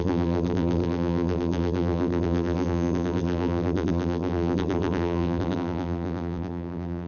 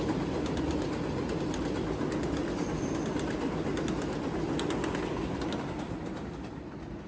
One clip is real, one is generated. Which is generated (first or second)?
first